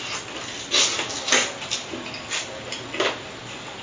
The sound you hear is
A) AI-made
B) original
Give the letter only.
B